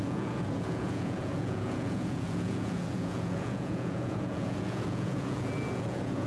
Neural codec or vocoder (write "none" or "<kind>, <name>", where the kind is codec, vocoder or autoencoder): vocoder, Vocos